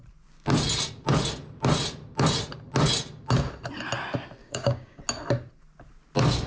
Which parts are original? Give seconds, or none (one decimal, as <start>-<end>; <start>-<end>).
0.0-4.4; 5.0-6.5